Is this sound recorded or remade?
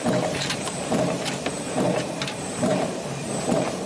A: remade